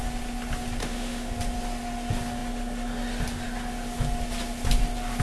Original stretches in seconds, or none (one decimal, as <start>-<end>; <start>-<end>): 0.0-0.8; 1.3-5.2